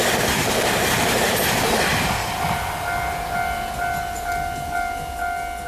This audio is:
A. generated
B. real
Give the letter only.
B